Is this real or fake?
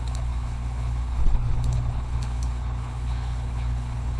fake